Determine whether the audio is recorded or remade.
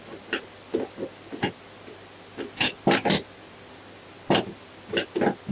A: recorded